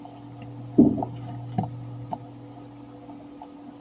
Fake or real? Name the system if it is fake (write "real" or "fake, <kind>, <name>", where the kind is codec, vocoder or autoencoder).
real